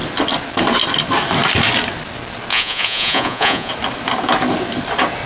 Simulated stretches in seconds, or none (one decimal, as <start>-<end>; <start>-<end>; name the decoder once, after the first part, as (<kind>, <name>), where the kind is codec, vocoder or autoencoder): 2.5-3.7 (vocoder, Vocos)